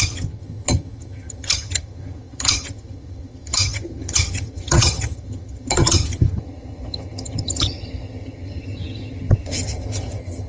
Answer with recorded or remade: remade